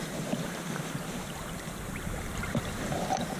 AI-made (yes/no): yes